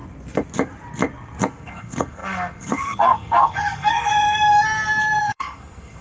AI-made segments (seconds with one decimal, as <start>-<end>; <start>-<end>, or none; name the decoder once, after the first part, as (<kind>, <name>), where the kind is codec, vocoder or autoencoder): 1.4-4.1 (codec, SNAC); 5.2-6.0